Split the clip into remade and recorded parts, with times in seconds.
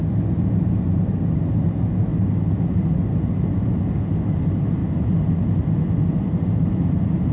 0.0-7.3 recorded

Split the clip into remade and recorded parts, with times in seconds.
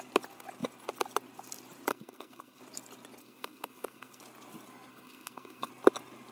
0.0-1.9 recorded; 1.9-2.6 remade; 2.6-3.2 recorded; 3.2-4.2 remade; 4.2-4.9 recorded; 4.9-5.7 remade; 5.7-6.3 recorded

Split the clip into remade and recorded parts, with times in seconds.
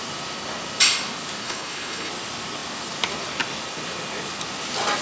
0.0-1.4 recorded; 1.4-2.1 remade; 2.1-5.0 recorded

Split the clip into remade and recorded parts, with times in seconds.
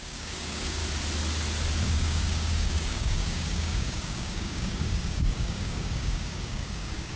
0.0-0.8 remade; 0.8-1.9 recorded; 1.9-7.2 remade